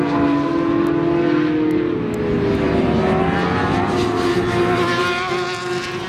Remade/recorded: recorded